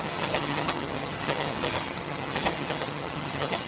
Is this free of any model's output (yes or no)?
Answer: no